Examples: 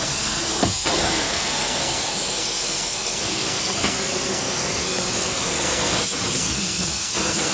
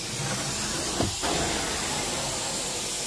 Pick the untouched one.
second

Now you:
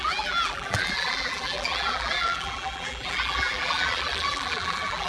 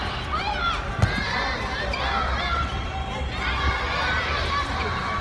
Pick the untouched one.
second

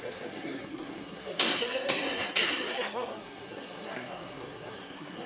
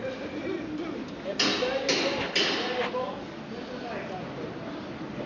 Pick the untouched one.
second